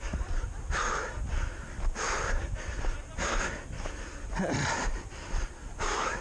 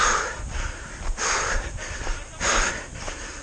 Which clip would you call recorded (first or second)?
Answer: first